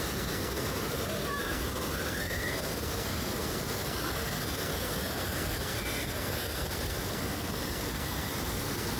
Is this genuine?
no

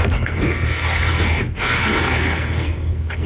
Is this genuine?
no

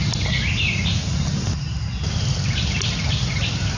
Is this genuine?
yes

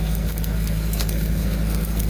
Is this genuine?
no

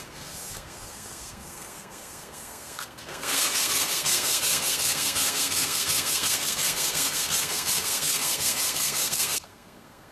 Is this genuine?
no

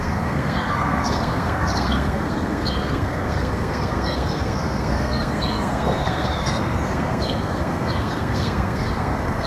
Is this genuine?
no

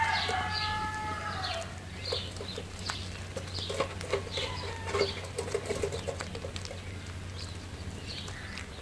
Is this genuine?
yes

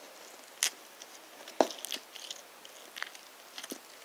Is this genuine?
yes